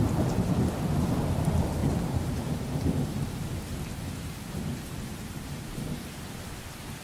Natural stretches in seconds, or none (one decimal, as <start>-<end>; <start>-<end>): 0.0-1.8; 6.0-7.0